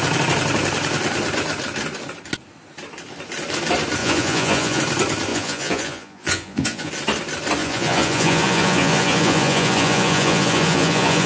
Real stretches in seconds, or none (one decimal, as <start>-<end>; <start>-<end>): 0.0-4.0; 4.8-5.3; 6.9-7.6